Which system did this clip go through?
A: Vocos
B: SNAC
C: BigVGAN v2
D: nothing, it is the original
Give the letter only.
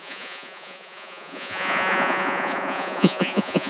A